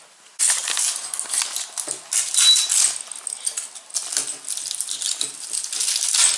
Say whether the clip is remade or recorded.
recorded